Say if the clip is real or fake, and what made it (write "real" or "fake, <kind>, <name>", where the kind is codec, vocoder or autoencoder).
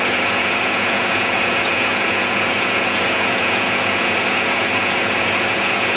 fake, vocoder, Vocos